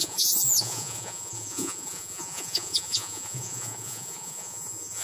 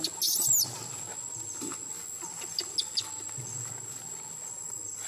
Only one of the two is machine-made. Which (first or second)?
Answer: first